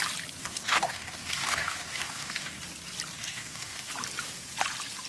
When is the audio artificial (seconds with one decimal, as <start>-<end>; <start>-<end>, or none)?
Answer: 0.4-2.6; 3.2-3.9